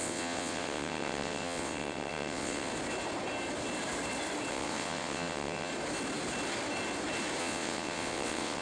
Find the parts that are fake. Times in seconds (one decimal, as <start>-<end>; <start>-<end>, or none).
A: 0.0-2.7; 4.5-5.7; 7.4-8.6